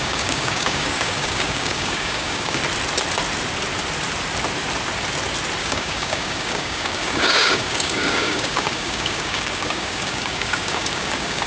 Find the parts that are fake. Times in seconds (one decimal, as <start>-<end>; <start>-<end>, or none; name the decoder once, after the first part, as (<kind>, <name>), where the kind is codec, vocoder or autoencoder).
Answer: 0.0-2.6 (codec, DAC); 5.6-11.5